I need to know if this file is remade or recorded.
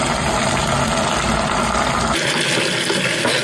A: recorded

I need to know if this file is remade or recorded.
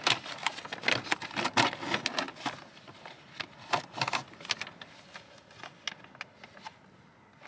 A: recorded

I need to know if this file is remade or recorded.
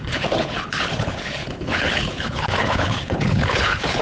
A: remade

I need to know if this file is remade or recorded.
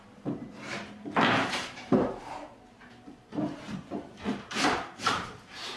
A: remade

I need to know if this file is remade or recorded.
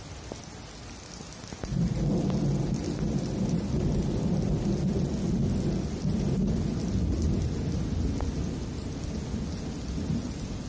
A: recorded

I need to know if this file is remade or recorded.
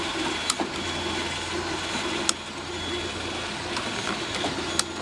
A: recorded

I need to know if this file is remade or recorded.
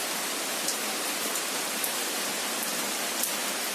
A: remade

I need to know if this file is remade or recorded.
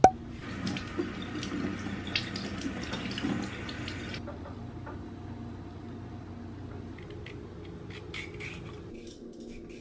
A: recorded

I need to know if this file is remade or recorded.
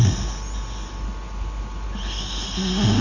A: recorded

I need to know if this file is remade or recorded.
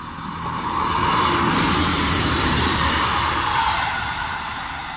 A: remade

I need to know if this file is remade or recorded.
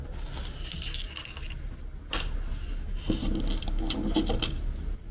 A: recorded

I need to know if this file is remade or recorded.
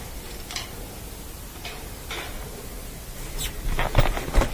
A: recorded